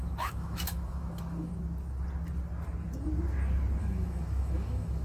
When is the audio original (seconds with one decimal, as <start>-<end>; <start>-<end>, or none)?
1.5-3.8